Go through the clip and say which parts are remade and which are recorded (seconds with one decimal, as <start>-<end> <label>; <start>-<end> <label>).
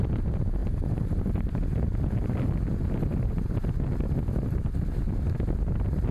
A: 0.0-6.1 recorded